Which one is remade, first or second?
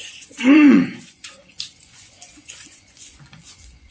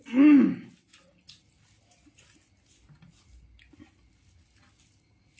first